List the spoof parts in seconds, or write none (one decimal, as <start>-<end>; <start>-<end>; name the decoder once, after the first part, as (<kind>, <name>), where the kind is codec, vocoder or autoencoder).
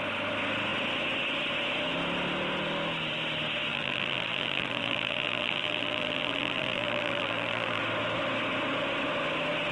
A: 3.7-7.8 (vocoder, BigVGAN v2)